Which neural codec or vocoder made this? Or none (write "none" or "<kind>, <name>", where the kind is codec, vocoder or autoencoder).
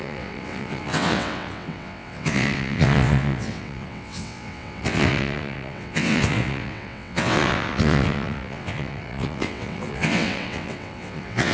vocoder, WaveNeXt